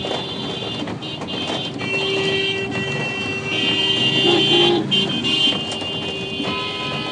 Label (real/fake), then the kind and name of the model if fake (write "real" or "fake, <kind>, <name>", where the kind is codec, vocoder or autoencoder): real